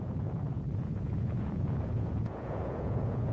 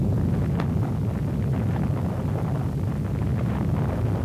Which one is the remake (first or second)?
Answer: first